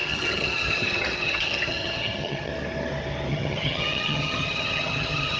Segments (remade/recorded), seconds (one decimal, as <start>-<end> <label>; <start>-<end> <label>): 0.0-2.5 remade; 2.5-3.3 recorded; 3.3-5.4 remade